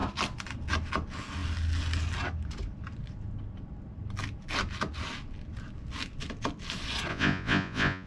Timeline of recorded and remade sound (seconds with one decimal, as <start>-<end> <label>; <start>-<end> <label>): 0.0-7.1 recorded; 7.1-8.1 remade